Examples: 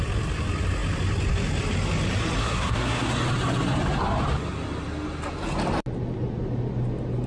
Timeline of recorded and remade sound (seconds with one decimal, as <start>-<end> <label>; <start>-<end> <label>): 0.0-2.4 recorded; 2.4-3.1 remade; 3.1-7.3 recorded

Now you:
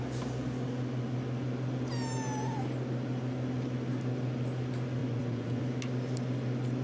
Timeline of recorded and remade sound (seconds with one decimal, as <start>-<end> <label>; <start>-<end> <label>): 0.0-5.0 recorded; 5.0-5.6 remade; 5.6-6.8 recorded

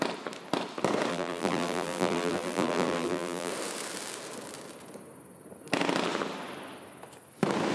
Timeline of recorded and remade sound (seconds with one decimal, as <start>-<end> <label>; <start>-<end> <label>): 0.0-1.1 recorded; 1.1-3.5 remade; 3.5-7.7 recorded